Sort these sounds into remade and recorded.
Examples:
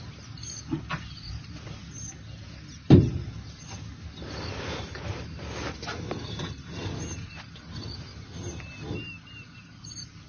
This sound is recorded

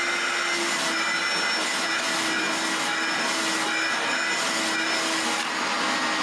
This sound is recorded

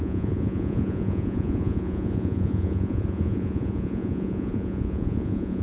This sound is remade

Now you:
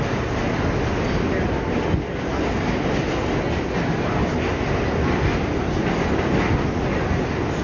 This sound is recorded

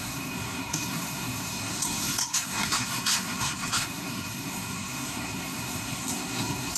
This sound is remade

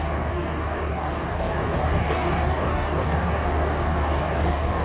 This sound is remade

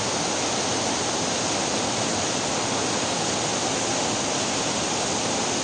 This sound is recorded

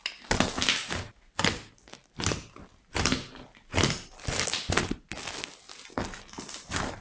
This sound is recorded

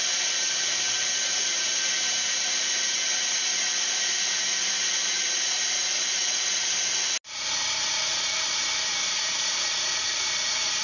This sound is recorded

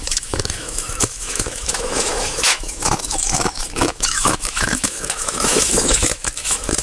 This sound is remade